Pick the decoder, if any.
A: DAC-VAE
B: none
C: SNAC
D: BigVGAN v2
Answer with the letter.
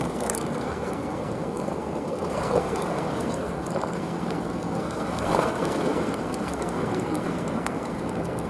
C